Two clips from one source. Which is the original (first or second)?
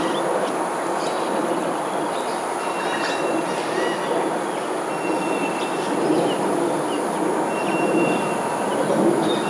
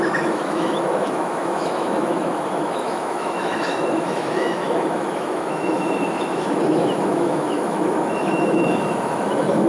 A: first